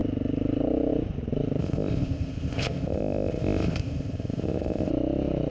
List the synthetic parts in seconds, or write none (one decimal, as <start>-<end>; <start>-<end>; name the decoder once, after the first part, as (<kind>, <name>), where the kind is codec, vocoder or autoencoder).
1.6-4.9 (codec, ZipCodec)